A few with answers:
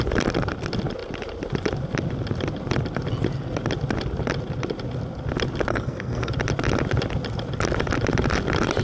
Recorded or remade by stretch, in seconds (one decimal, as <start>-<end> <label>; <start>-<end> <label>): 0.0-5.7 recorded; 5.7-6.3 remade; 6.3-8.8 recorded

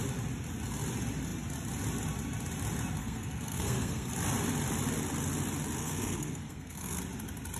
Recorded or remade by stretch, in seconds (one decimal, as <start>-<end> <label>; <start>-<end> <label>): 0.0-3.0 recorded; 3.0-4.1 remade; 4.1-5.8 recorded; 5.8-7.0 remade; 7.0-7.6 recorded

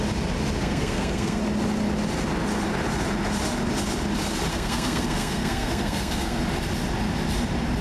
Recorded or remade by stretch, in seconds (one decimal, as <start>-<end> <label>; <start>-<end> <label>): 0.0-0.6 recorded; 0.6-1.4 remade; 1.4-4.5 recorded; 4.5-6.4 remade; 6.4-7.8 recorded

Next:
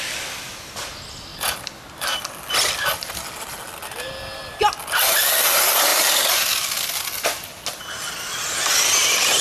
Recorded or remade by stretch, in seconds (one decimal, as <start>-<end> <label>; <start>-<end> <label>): 0.0-9.4 recorded

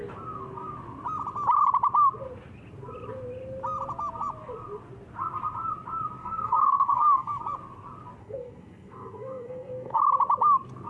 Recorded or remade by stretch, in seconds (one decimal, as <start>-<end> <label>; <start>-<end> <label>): 0.0-6.2 recorded; 6.2-7.4 remade; 7.4-8.2 recorded; 8.2-10.0 remade; 10.0-10.9 recorded

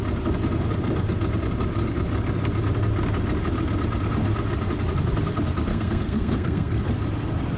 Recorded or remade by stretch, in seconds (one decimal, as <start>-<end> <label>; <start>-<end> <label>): 0.0-5.7 recorded; 5.7-6.8 remade; 6.8-7.6 recorded